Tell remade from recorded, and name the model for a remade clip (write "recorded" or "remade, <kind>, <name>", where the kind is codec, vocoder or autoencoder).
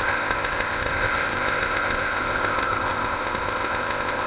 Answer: remade, codec, ZipCodec